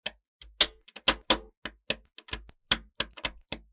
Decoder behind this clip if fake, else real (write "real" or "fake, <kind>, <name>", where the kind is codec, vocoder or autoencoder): real